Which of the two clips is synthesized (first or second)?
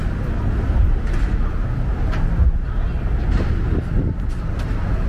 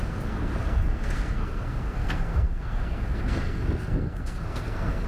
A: second